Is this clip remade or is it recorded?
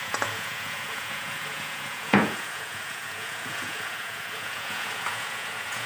remade